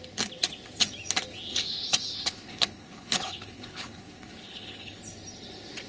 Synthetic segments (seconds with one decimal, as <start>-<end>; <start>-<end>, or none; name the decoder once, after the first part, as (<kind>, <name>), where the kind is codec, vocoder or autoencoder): 1.5-5.0 (codec, HILCodec)

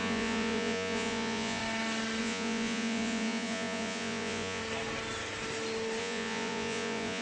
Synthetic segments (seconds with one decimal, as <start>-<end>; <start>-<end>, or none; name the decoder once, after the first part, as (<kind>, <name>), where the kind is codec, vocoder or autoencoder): 0.0-1.6 (vocoder, Vocos); 2.2-4.6; 6.0-7.2

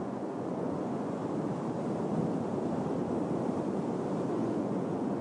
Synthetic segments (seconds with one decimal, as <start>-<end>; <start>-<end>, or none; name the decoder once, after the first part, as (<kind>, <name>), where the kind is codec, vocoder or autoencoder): 0.0-1.2 (vocoder, Vocos); 4.3-5.2

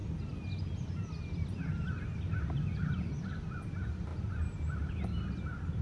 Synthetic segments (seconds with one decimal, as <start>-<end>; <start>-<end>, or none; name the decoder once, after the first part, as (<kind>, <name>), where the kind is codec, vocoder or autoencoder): none